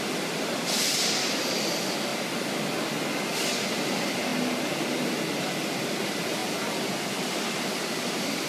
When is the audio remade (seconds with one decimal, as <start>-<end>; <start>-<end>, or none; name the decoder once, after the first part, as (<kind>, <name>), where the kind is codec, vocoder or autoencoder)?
0.0-2.1 (vocoder, BigVGAN v2); 3.7-4.3; 5.4-8.5